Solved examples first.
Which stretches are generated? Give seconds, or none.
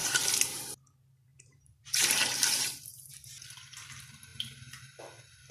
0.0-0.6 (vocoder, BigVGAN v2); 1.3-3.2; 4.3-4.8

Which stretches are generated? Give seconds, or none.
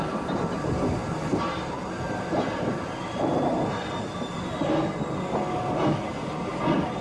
none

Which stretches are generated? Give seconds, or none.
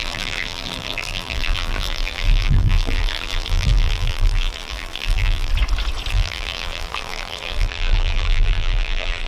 0.0-5.5 (vocoder, BigVGAN v2); 6.1-9.3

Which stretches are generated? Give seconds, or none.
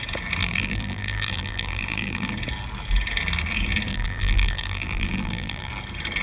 0.4-2.3 (vocoder, BigVGAN v2); 3.9-5.7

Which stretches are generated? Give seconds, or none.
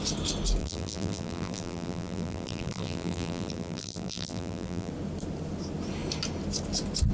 0.6-4.9 (vocoder, BigVGAN v2)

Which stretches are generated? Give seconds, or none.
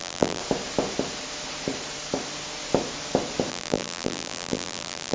0.0-0.4 (vocoder, BigVGAN v2); 3.5-5.1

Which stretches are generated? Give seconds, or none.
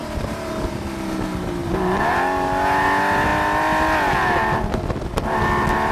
0.0-0.7 (vocoder, BigVGAN v2)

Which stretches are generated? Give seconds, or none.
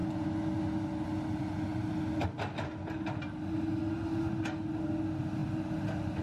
none